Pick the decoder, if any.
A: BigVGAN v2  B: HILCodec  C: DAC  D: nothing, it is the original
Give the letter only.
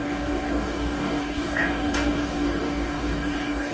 C